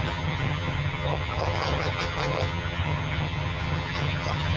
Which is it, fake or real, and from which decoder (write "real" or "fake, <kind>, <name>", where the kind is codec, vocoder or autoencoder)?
fake, vocoder, HiFi-GAN